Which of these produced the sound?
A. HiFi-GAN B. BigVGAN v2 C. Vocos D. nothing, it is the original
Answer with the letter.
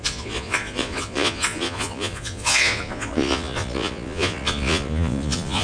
C